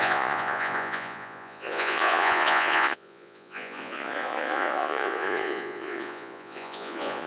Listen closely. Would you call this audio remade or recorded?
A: remade